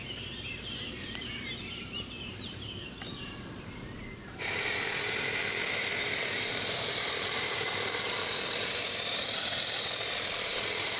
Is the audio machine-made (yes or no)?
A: yes